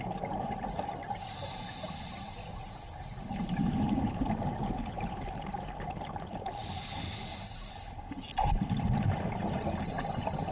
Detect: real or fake real